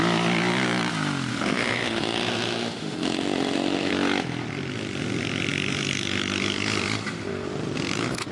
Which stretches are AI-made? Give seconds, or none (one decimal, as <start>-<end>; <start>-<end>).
1.3-3.9